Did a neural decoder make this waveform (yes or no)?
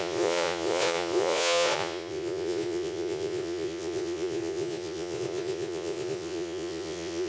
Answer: yes